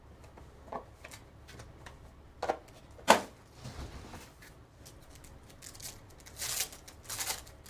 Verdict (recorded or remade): recorded